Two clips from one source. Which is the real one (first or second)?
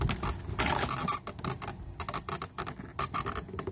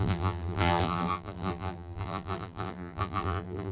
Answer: first